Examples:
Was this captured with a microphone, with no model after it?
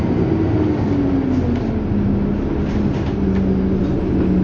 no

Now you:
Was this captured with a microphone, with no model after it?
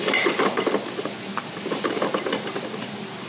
yes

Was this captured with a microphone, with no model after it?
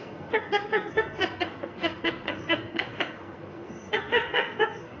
no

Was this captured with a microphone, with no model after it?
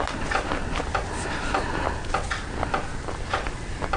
yes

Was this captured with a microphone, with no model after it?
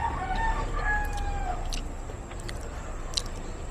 yes